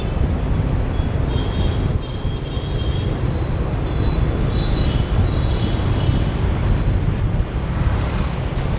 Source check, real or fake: real